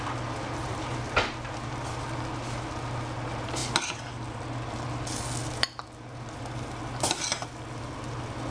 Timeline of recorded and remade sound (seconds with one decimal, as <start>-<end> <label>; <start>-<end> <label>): 0.0-8.5 recorded